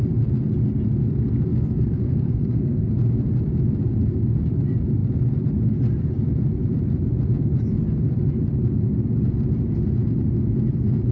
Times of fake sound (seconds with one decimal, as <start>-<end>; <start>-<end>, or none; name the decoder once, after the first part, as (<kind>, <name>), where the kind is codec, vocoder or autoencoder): 1.0-2.9 (codec, SNAC)